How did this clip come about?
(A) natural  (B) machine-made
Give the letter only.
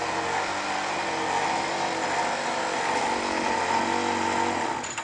A